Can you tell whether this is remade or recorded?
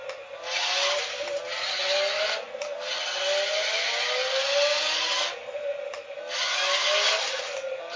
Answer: recorded